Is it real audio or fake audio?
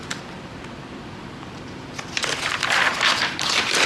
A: fake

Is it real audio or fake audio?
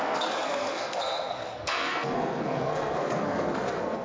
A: fake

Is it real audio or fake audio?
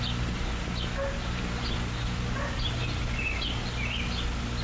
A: real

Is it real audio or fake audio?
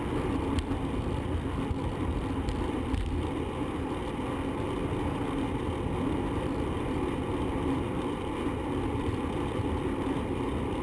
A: real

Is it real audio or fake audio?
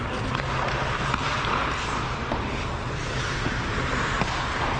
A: real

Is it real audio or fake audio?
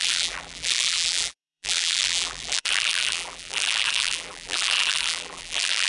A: fake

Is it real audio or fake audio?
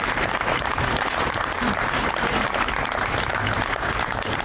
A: fake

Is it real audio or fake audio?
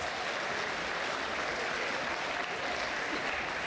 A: real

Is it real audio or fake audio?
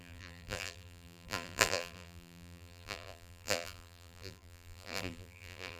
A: fake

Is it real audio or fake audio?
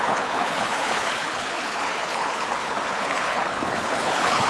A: fake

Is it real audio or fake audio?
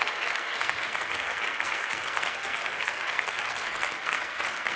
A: fake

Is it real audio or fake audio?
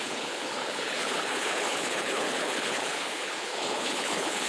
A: fake